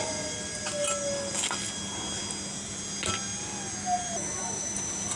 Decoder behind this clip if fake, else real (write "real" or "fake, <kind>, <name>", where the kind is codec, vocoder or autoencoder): real